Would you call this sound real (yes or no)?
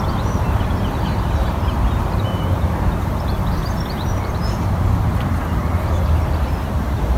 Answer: no